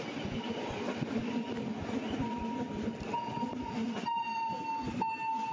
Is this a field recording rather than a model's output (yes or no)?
yes